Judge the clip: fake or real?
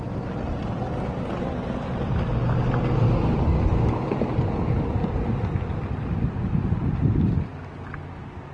real